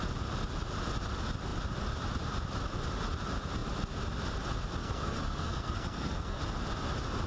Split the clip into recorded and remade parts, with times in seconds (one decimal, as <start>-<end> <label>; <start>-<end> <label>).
0.0-4.8 recorded; 4.8-6.4 remade; 6.4-7.3 recorded